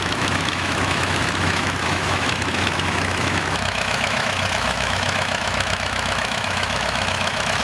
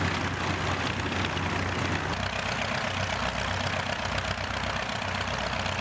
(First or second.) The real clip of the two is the second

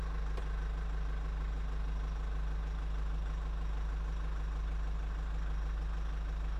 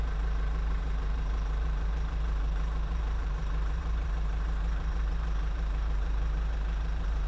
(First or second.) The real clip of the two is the first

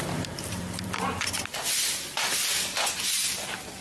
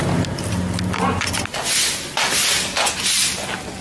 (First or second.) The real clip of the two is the second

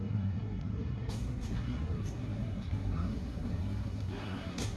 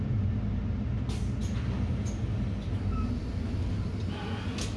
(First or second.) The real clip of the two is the second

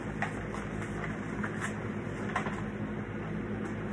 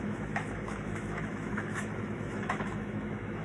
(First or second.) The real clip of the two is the first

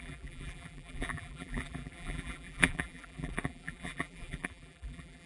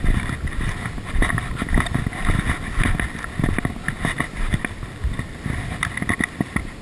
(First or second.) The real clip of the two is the second